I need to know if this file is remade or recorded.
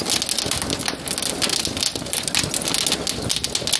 recorded